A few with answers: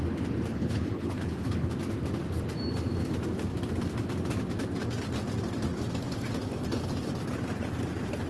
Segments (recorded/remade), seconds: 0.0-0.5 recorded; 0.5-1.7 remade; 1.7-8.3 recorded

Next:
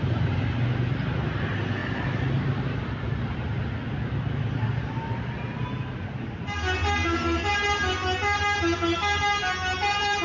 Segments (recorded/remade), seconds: 0.0-10.2 recorded

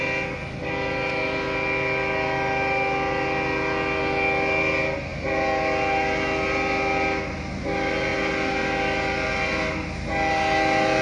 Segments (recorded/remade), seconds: 0.0-11.0 recorded

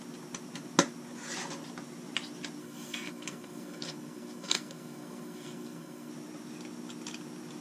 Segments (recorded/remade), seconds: 0.0-2.6 recorded; 2.6-6.1 remade; 6.1-7.6 recorded

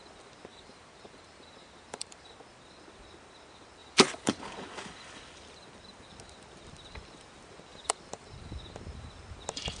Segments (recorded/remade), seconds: 0.0-0.5 recorded; 0.5-2.3 remade; 2.3-3.8 recorded; 3.8-4.4 remade; 4.4-7.7 recorded; 7.7-8.5 remade; 8.5-9.8 recorded

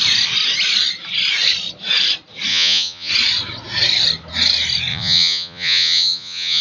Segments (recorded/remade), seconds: 0.0-2.5 recorded; 2.5-3.1 remade; 3.1-4.9 recorded; 4.9-6.6 remade

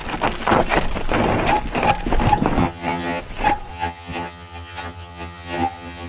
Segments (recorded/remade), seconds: 0.0-2.6 recorded; 2.6-3.2 remade; 3.2-3.7 recorded; 3.7-6.1 remade